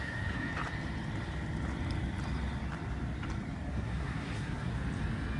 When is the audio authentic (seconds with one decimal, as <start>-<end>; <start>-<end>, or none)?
0.5-3.7; 4.7-5.4